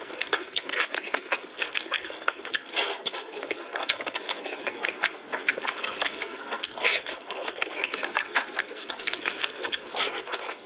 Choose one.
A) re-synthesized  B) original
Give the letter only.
A